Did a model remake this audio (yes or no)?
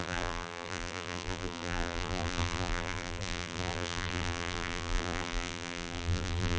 yes